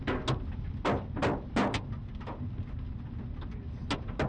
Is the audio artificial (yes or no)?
no